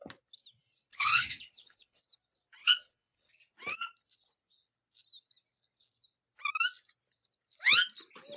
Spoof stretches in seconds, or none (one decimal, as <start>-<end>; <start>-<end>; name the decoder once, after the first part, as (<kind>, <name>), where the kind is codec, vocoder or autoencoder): 0.9-2.0 (codec, HILCodec); 2.6-3.3